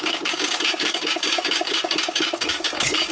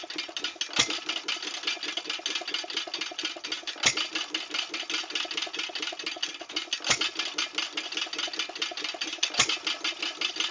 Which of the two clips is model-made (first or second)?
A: first